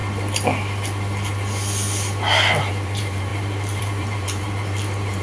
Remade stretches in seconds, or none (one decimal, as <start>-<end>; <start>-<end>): 2.7-5.2